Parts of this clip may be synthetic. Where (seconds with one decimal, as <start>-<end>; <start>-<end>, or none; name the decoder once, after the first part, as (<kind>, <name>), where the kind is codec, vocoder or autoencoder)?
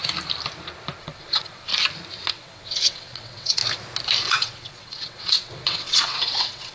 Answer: 1.0-1.7 (vocoder, WaveNeXt); 2.3-3.6; 4.3-6.7